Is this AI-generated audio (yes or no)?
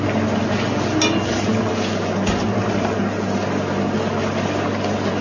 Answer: no